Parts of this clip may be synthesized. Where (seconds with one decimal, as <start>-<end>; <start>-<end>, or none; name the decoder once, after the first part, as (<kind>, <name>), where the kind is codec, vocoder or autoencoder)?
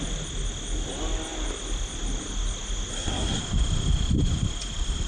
2.9-3.4 (codec, SNAC)